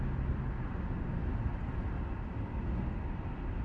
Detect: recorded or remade recorded